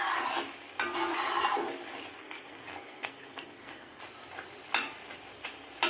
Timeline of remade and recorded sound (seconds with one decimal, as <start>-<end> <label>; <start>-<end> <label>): 0.0-2.2 recorded; 2.2-4.0 remade; 4.0-5.9 recorded